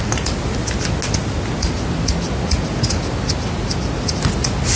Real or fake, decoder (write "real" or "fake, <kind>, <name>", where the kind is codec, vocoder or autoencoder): real